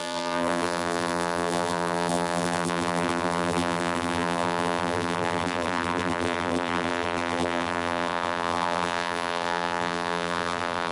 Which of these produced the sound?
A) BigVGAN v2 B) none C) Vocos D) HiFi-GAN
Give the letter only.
A